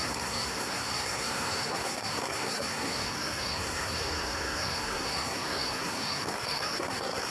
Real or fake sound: fake